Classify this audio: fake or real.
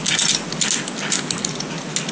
real